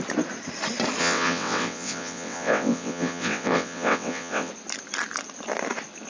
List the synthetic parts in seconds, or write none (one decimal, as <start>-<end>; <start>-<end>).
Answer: 1.0-4.5